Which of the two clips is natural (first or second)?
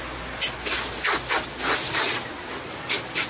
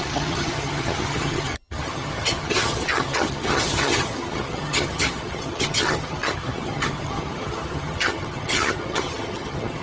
first